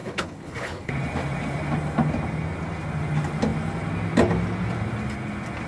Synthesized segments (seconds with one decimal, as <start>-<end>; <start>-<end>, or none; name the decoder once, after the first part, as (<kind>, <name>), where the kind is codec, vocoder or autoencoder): 0.0-0.9 (codec, HILCodec)